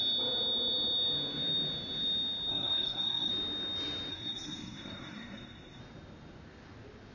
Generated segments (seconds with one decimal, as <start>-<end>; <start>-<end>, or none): 2.5-3.3; 4.1-5.8